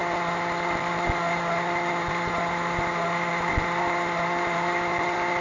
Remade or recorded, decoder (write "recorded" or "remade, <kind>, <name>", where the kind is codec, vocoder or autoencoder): recorded